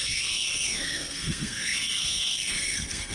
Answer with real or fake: fake